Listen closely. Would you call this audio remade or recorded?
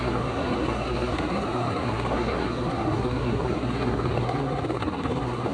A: remade